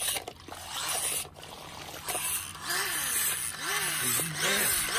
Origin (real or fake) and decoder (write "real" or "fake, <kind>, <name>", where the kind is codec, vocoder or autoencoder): real